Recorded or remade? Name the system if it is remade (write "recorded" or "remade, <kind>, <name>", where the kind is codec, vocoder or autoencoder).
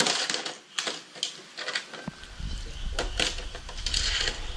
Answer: recorded